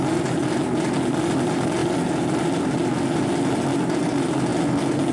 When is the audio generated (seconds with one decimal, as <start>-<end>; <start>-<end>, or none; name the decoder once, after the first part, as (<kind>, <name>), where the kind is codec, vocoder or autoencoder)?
none